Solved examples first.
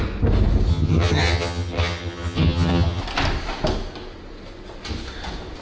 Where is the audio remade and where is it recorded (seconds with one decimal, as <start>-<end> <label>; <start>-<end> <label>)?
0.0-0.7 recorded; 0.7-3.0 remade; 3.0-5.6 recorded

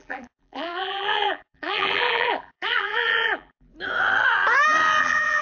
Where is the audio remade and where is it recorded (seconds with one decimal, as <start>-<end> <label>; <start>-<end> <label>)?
0.0-3.7 remade; 3.7-5.0 recorded; 5.0-5.4 remade

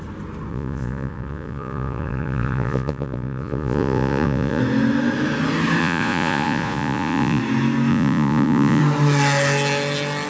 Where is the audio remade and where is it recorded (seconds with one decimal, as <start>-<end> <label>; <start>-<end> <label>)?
0.0-0.5 recorded; 0.5-4.6 remade; 4.6-5.8 recorded; 5.8-7.4 remade; 7.4-7.9 recorded; 7.9-8.8 remade; 8.8-10.3 recorded

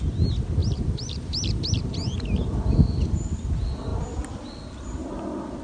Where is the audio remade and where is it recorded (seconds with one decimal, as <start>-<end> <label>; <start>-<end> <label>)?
0.0-0.6 recorded; 0.6-1.8 remade; 1.8-5.6 recorded

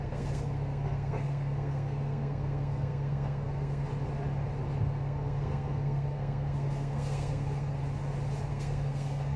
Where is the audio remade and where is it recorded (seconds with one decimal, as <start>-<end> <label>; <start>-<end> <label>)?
0.0-3.9 remade; 3.9-4.8 recorded; 4.8-7.8 remade; 7.8-8.5 recorded; 8.5-9.4 remade

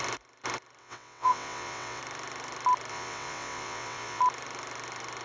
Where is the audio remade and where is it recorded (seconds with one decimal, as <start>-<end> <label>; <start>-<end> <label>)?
0.0-0.8 recorded; 0.8-2.0 remade; 2.0-2.9 recorded; 2.9-4.2 remade; 4.2-5.2 recorded

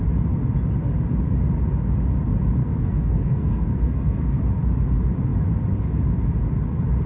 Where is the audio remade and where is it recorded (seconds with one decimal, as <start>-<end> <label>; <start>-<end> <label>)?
0.0-2.6 recorded; 2.6-4.4 remade; 4.4-7.1 recorded

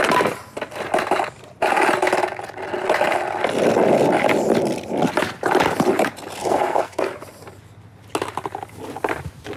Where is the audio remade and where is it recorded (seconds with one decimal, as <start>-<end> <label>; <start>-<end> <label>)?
0.0-6.4 recorded; 6.4-7.1 remade; 7.1-9.6 recorded